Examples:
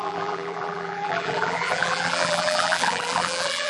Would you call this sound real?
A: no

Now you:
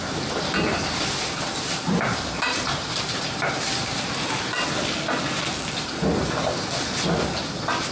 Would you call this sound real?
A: no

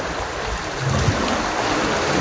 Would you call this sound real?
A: yes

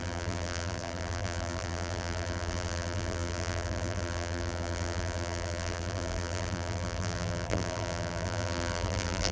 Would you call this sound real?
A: no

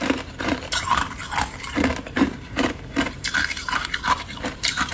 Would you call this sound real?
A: no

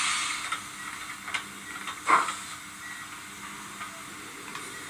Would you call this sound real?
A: yes